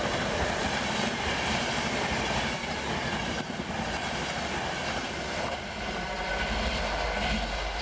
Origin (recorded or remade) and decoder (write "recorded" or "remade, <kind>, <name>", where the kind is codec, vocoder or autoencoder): recorded